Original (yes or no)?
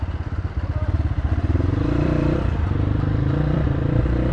no